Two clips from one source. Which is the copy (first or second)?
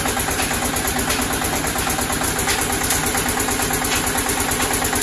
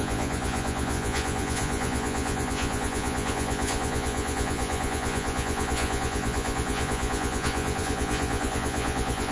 second